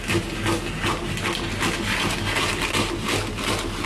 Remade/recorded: recorded